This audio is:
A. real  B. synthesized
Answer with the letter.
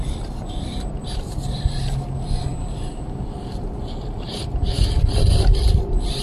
B